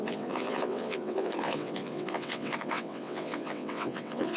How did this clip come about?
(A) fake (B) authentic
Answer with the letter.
A